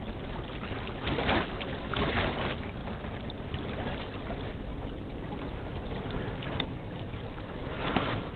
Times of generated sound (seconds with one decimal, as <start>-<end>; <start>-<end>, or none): 2.8-4.0